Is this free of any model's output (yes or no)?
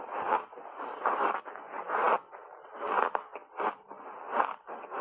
yes